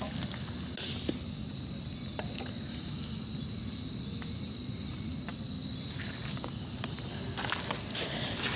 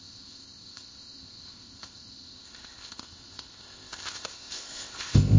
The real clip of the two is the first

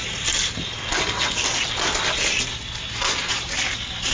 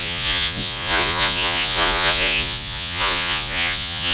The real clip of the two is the first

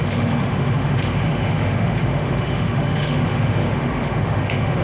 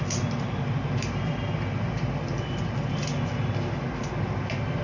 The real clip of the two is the second